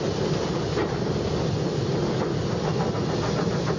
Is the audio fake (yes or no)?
no